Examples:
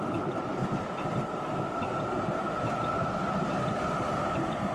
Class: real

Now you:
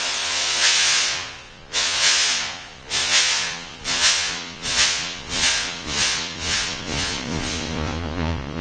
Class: fake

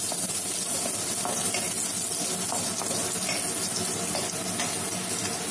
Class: real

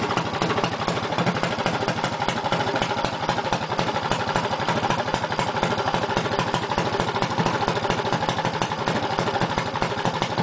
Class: real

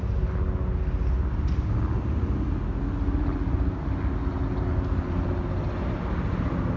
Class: real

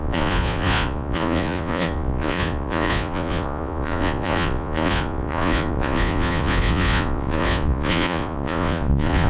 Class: fake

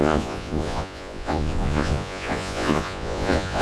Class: fake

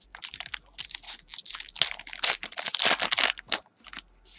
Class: real